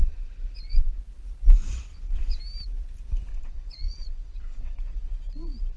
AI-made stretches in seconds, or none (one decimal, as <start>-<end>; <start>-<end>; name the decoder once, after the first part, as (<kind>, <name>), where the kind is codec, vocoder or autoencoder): 0.0-1.0 (vocoder, Vocos); 1.9-2.4; 3.3-5.8